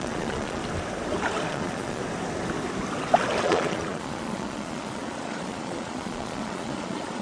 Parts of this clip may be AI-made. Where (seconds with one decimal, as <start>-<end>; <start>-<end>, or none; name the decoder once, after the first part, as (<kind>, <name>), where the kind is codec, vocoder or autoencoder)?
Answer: 0.0-0.6 (vocoder, Vocos); 1.5-2.0; 3.4-7.2